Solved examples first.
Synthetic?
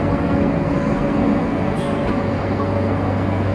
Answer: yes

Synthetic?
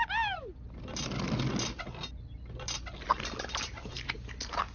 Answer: no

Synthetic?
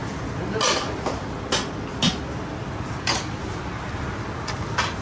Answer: no